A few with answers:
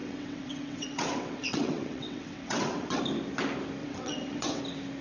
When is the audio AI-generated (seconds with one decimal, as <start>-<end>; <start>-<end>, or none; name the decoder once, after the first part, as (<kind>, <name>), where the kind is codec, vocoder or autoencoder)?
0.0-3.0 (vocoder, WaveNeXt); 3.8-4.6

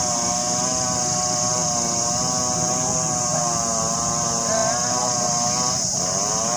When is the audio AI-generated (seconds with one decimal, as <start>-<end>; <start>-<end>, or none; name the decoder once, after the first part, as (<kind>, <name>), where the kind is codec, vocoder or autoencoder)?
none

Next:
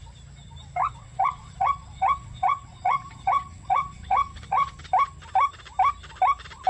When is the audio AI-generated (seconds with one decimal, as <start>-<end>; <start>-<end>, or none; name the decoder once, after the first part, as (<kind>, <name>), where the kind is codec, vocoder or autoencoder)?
0.8-4.8 (vocoder, WaveNeXt)

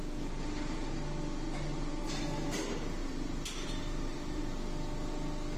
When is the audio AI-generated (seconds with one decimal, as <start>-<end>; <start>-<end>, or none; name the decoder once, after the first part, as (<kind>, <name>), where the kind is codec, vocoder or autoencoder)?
1.7-2.2 (vocoder, BigVGAN v2); 3.0-4.4

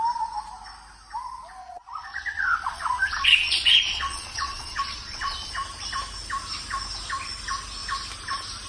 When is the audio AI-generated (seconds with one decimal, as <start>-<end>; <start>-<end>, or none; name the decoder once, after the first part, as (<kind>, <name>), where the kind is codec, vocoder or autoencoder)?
1.6-5.5 (vocoder, Vocos)

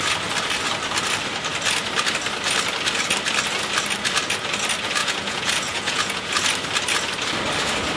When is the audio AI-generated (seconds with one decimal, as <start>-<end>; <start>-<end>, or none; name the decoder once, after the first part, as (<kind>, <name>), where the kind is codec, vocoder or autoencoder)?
5.0-6.3 (vocoder, Vocos)

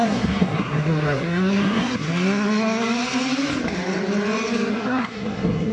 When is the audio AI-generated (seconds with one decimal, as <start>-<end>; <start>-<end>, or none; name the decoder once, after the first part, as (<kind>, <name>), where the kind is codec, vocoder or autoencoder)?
0.0-2.1 (codec, SNAC); 4.7-5.7